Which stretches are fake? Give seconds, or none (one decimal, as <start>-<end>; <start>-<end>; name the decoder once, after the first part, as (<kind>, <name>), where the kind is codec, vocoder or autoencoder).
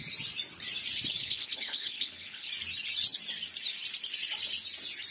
1.2-2.5 (codec, HILCodec)